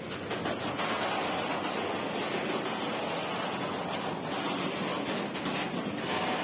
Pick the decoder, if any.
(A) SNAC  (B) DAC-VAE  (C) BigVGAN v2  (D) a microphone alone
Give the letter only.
D